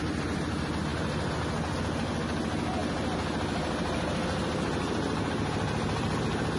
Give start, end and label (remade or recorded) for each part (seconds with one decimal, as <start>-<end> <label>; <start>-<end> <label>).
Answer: 0.0-6.6 recorded